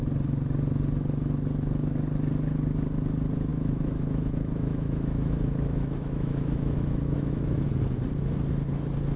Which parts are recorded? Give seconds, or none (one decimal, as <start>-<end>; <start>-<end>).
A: 0.0-3.5; 7.6-9.2